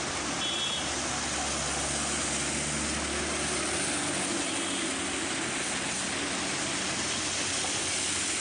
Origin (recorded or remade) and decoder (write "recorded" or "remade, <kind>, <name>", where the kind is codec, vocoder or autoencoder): recorded